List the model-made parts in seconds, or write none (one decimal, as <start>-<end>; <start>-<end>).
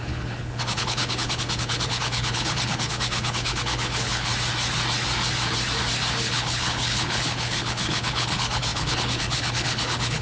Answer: 0.0-4.3; 6.2-10.2